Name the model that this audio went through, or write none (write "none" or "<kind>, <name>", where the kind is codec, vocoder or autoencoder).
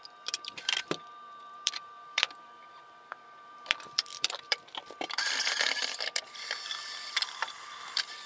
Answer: vocoder, BigVGAN v2